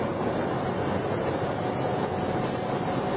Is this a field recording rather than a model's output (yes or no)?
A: yes